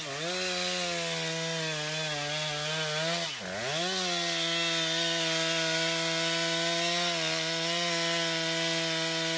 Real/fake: real